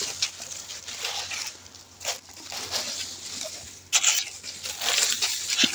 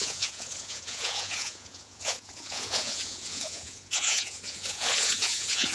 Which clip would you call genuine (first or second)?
first